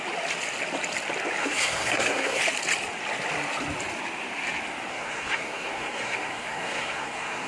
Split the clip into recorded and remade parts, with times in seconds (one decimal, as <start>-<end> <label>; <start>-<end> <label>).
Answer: 0.0-1.4 recorded; 1.4-2.4 remade; 2.4-4.9 recorded; 4.9-7.5 remade